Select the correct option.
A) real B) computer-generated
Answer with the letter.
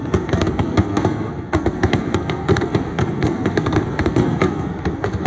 B